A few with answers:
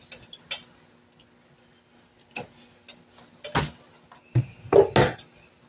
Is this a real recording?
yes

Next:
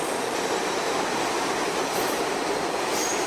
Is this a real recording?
no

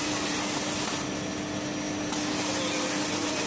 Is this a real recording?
yes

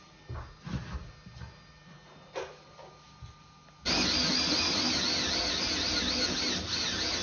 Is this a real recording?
yes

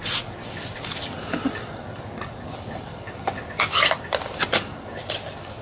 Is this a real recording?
no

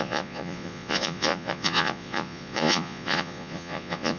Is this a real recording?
no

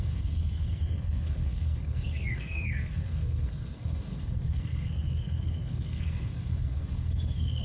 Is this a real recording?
no